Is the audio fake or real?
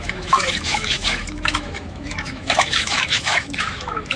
fake